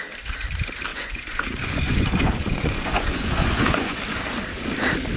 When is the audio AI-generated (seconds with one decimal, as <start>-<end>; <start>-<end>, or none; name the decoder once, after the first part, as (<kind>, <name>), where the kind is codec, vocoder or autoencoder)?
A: 0.9-4.0 (vocoder, Vocos)